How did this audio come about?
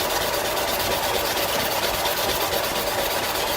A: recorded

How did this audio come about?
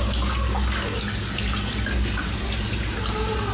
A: recorded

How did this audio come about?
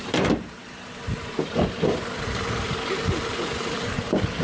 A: remade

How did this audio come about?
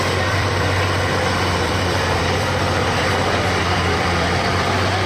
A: remade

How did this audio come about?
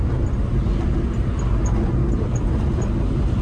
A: recorded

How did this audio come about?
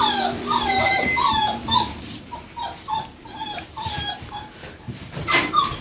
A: remade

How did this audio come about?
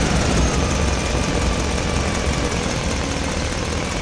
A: recorded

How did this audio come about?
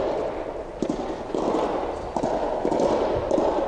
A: recorded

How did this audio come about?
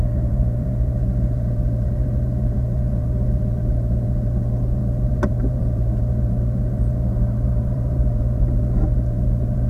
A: remade